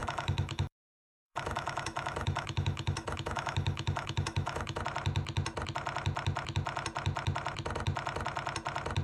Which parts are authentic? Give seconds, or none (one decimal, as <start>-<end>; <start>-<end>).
4.8-9.0